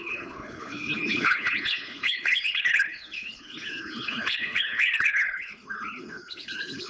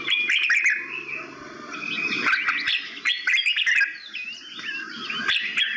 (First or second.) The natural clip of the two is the second